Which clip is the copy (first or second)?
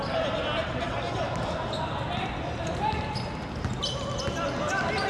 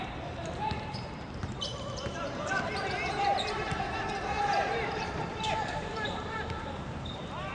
second